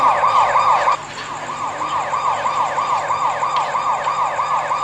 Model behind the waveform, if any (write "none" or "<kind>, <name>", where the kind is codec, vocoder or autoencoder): none